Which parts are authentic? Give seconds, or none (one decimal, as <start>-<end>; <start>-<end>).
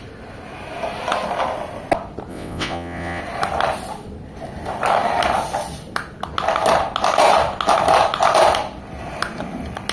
0.0-2.3; 3.2-9.9